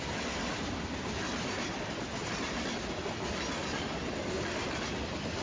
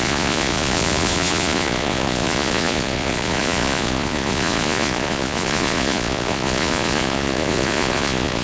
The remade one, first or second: second